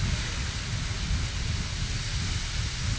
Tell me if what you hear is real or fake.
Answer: real